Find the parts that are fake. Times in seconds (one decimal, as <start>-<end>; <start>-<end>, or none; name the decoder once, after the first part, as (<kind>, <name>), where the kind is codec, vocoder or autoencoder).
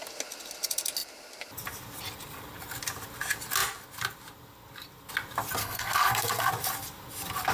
5.6-6.5 (codec, SNAC)